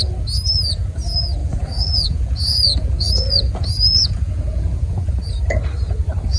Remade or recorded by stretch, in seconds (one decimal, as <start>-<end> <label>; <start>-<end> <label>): 0.0-1.4 recorded; 1.4-5.2 remade; 5.2-6.4 recorded